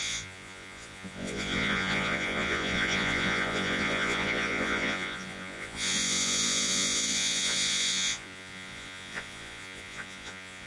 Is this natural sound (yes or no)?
no